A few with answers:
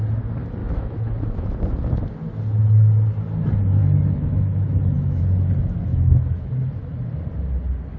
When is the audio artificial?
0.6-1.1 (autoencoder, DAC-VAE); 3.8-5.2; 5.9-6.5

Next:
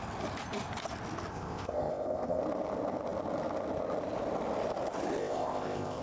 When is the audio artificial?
1.3-2.4 (codec, ZipCodec); 5.2-6.0

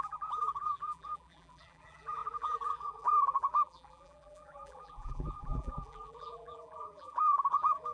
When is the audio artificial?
0.0-7.9 (vocoder, BigVGAN v2)

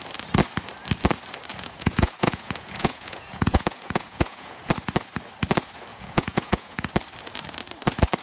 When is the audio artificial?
1.5-4.7 (vocoder, Vocos); 5.9-6.9

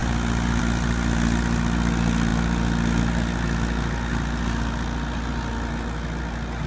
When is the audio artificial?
none